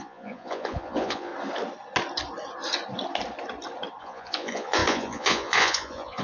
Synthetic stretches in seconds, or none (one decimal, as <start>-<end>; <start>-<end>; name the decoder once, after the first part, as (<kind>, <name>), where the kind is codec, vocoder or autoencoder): 0.0-1.3 (vocoder, Vocos); 4.0-6.2